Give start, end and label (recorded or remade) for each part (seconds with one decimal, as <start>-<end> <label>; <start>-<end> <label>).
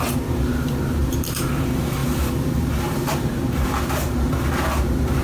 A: 0.0-1.0 recorded; 1.0-1.5 remade; 1.5-5.2 recorded